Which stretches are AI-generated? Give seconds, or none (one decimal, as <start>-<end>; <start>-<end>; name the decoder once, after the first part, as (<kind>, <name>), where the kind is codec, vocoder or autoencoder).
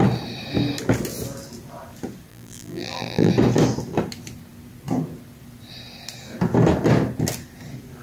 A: 2.3-3.3 (vocoder, BigVGAN v2)